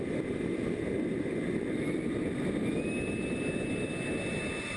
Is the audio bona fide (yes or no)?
yes